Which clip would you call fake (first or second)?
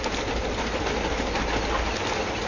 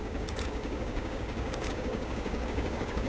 second